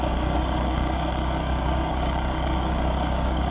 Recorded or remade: remade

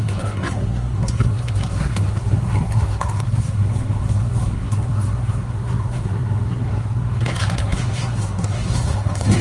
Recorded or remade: remade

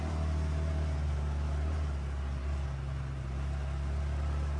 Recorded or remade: recorded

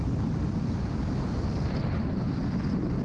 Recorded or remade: recorded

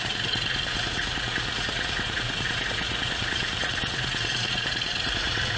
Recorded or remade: remade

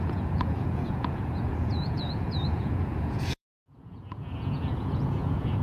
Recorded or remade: remade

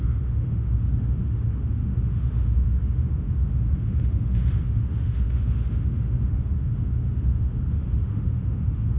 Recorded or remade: remade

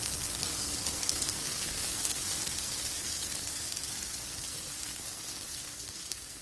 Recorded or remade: remade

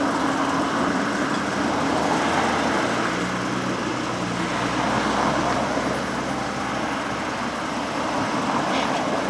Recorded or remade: recorded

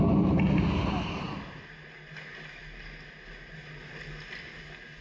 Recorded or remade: recorded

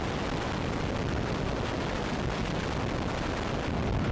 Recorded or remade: recorded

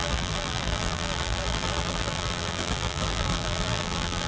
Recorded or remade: remade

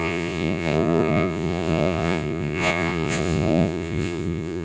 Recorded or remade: remade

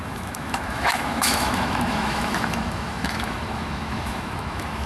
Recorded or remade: remade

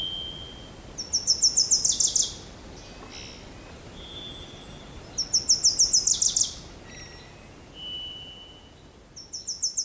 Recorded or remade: recorded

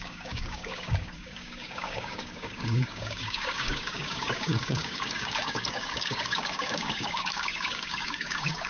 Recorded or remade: remade